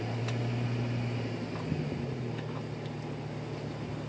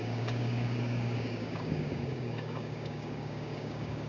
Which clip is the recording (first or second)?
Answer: first